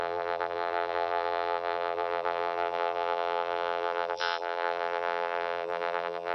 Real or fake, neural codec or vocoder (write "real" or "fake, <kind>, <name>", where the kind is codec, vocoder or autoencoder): fake, vocoder, BigVGAN v2